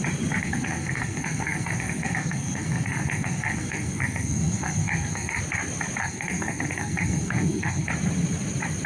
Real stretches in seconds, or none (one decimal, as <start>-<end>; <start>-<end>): 0.0-0.4; 5.4-6.0; 7.9-8.9